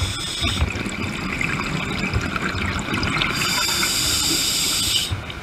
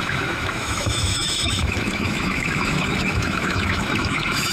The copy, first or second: second